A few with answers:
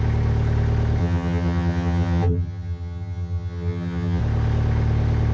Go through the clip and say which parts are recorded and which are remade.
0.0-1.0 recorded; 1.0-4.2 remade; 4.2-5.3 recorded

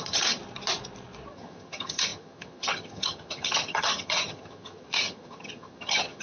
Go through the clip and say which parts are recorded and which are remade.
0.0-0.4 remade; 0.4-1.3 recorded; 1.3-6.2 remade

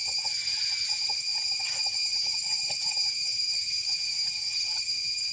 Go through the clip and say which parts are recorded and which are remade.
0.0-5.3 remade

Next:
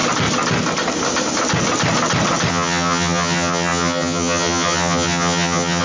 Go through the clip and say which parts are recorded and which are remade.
0.0-2.5 recorded; 2.5-5.8 remade

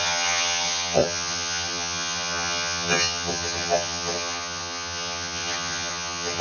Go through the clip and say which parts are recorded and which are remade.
0.0-6.4 remade

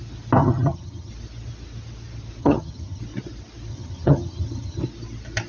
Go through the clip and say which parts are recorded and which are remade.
0.0-0.4 recorded; 0.4-1.1 remade; 1.1-2.4 recorded; 2.4-3.0 remade; 3.0-3.7 recorded; 3.7-4.8 remade; 4.8-5.5 recorded

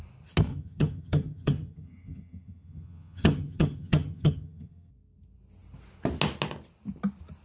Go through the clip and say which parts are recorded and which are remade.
0.0-0.5 recorded; 0.5-4.9 remade; 4.9-7.4 recorded